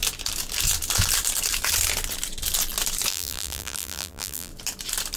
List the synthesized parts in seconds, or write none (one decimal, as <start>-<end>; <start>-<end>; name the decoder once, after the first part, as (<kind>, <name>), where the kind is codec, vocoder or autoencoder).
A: 3.1-4.5 (vocoder, BigVGAN v2)